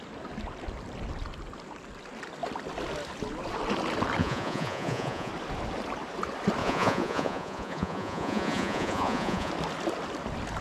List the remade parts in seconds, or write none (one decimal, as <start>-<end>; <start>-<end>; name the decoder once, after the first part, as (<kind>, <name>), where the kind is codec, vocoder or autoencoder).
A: 4.2-5.3 (vocoder, Vocos); 6.6-9.5